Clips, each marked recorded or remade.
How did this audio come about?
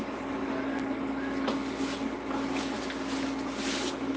recorded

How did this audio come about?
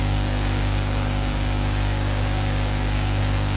remade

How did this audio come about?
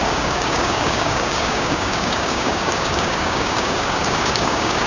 remade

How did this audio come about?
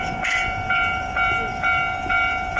remade